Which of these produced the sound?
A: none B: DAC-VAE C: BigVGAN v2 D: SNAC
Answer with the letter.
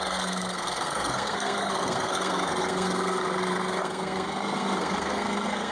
D